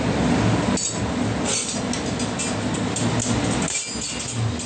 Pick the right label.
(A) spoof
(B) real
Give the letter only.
B